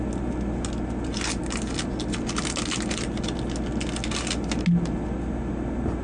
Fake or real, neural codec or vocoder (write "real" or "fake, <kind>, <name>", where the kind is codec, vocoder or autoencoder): real